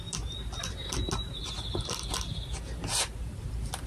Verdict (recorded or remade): recorded